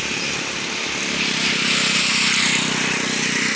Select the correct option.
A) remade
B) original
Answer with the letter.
B